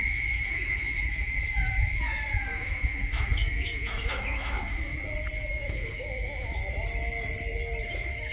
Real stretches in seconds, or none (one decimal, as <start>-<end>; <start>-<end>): 4.9-5.5; 6.6-7.8